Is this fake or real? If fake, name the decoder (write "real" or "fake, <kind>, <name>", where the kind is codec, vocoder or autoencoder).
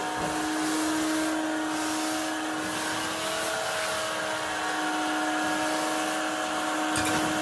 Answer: real